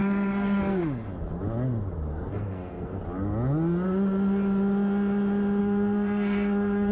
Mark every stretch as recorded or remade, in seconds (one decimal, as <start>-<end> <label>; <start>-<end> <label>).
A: 0.0-0.8 remade; 0.8-2.1 recorded; 2.1-3.0 remade; 3.0-5.6 recorded; 5.6-6.9 remade